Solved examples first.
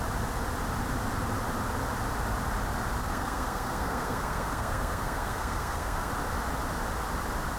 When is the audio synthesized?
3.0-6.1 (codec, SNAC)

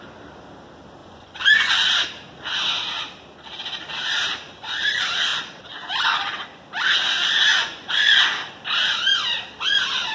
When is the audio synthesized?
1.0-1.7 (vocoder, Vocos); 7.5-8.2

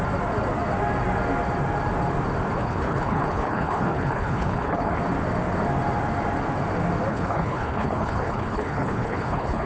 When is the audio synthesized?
2.6-5.0 (codec, HILCodec); 7.1-9.7